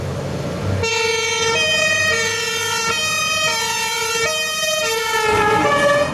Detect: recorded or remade remade